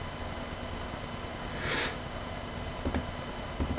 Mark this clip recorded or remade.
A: recorded